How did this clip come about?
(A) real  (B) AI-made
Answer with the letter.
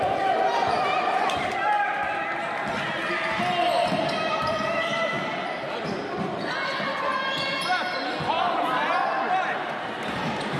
A